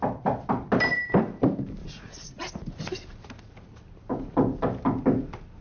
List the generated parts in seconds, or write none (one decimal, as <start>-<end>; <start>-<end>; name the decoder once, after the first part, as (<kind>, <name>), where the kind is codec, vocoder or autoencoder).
1.8-2.5 (vocoder, Vocos)